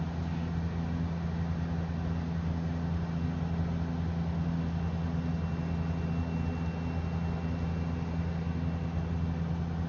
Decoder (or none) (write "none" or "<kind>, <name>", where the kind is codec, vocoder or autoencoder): none